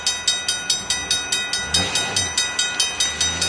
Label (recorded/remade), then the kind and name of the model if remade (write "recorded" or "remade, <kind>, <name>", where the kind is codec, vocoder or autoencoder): recorded